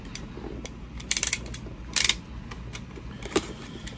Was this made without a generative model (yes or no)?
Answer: yes